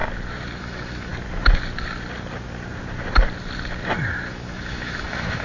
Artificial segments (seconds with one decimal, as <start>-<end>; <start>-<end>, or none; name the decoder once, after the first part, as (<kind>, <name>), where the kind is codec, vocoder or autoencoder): 0.6-1.1 (autoencoder, DAC-VAE); 4.3-5.4